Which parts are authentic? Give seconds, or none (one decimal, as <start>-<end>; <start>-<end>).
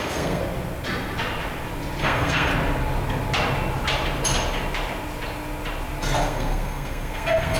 0.4-2.0; 2.5-6.2